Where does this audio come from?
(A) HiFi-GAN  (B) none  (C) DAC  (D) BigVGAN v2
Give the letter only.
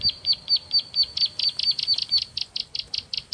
B